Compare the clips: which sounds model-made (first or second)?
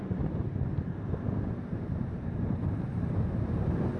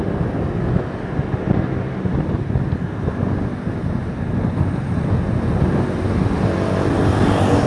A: first